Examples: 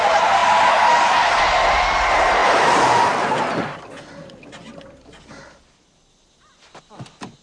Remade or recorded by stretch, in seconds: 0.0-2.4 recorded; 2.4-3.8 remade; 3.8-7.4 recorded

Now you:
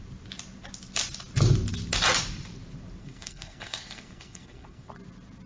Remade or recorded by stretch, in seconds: 0.0-3.0 recorded; 3.0-4.9 remade; 4.9-5.5 recorded

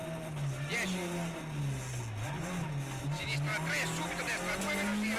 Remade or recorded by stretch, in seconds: 0.0-5.2 recorded

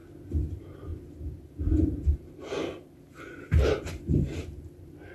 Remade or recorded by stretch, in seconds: 0.0-0.5 recorded; 0.5-5.1 remade

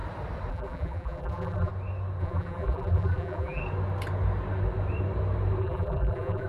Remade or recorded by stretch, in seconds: 0.0-0.5 recorded; 0.5-1.7 remade; 1.7-2.2 recorded; 2.2-3.6 remade; 3.6-5.6 recorded; 5.6-6.5 remade

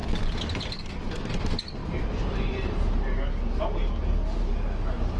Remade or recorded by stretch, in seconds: 0.0-5.2 recorded